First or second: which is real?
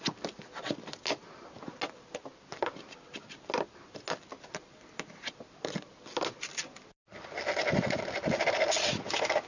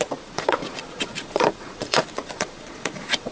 first